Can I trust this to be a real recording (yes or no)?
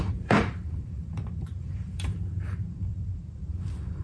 no